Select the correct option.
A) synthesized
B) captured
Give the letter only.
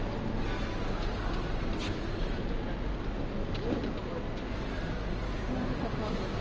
B